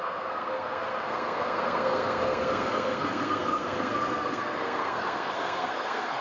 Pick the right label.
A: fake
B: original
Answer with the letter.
A